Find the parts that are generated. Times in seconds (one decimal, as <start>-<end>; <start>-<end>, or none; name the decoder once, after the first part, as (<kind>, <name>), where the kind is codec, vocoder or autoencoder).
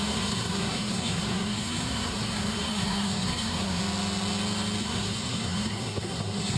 0.0-3.8 (codec, SNAC); 4.8-6.6